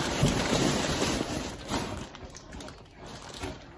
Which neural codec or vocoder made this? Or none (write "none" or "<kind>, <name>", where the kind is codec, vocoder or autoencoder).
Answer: vocoder, BigVGAN v2